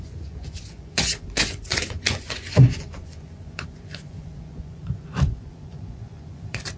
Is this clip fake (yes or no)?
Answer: yes